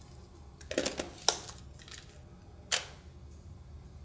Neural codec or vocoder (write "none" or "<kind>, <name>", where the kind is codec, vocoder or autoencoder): none